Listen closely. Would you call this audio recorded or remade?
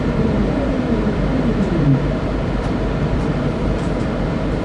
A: remade